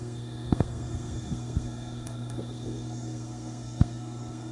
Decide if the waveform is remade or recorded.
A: remade